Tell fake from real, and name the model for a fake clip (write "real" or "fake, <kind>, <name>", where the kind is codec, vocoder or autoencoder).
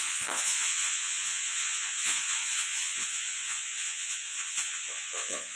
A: fake, vocoder, Vocos